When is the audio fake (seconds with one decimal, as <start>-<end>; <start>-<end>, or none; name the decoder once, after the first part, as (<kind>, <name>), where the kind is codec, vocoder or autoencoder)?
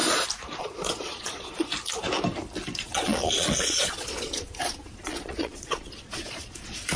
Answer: 0.6-1.7 (vocoder, Vocos); 2.8-7.0